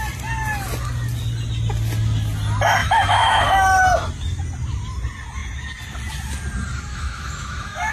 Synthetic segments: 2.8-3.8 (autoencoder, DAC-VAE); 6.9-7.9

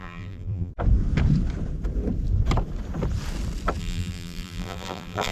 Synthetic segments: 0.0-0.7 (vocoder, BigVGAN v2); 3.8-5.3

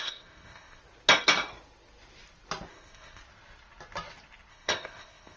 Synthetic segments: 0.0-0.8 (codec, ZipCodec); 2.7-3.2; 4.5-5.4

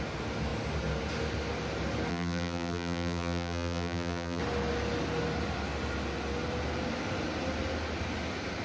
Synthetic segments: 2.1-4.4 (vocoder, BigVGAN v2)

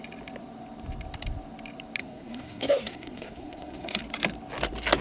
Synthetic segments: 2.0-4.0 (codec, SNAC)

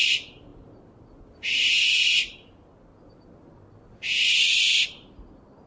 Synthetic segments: none

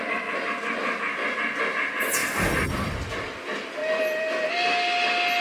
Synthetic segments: 2.2-3.4 (vocoder, BigVGAN v2); 3.8-4.5